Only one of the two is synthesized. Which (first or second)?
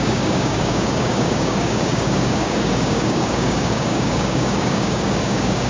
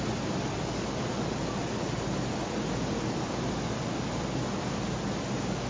first